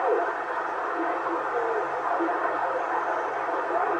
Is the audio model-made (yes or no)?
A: no